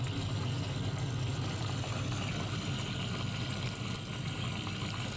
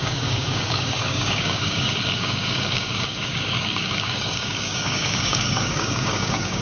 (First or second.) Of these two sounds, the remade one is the second